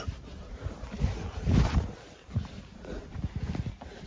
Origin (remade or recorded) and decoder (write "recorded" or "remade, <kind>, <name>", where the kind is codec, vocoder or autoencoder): recorded